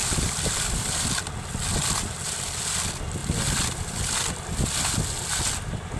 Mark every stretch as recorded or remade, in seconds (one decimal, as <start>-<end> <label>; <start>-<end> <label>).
0.0-1.0 remade; 1.0-3.2 recorded; 3.2-4.0 remade; 4.0-6.0 recorded